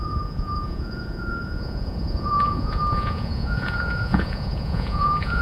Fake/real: fake